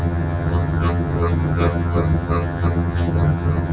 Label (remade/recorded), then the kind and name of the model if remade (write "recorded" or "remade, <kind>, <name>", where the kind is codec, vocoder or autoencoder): remade, vocoder, HiFi-GAN